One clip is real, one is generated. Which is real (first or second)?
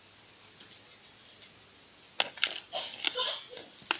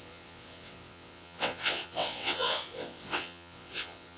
first